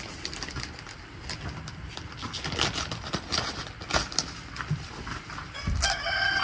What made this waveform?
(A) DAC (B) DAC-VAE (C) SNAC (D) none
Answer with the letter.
D